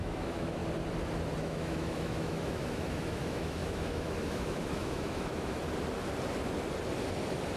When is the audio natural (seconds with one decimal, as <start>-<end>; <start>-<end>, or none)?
0.6-1.4; 5.6-7.6